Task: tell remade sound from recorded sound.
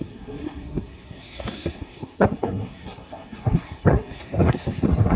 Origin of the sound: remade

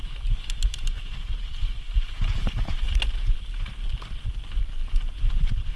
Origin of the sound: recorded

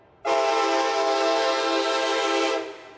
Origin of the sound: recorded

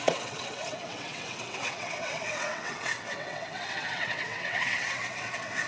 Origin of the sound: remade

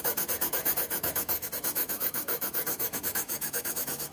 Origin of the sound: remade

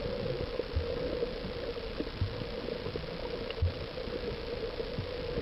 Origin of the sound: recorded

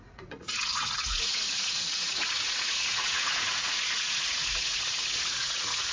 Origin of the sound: remade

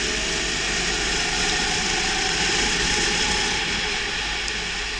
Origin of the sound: recorded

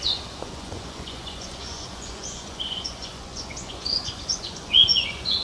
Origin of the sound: remade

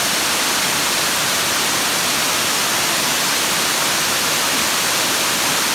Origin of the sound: recorded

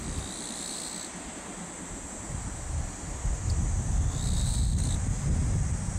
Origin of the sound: recorded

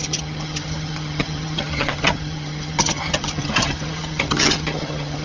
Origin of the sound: remade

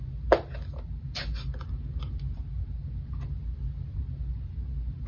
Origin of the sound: recorded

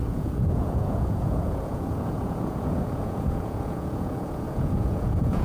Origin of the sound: remade